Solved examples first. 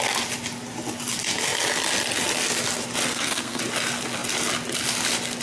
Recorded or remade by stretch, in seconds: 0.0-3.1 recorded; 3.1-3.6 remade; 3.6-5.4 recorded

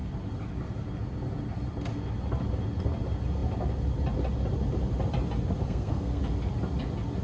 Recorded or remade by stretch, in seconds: 0.0-5.6 recorded; 5.6-6.2 remade; 6.2-7.2 recorded

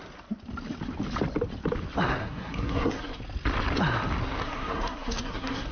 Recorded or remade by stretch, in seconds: 0.0-2.2 recorded; 2.2-3.2 remade; 3.2-4.4 recorded; 4.4-5.7 remade

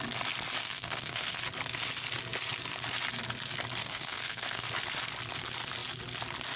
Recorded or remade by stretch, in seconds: 0.0-0.6 recorded; 0.6-1.4 remade; 1.4-3.8 recorded; 3.8-4.7 remade; 4.7-6.6 recorded